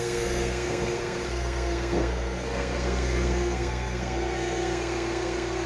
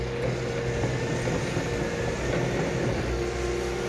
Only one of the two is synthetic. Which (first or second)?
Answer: first